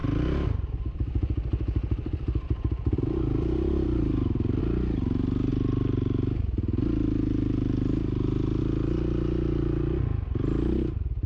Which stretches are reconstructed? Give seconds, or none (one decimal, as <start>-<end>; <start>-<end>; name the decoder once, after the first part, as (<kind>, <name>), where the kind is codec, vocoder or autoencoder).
0.0-4.6 (vocoder, BigVGAN v2); 10.1-11.3